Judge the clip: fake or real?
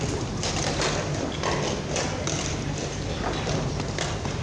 real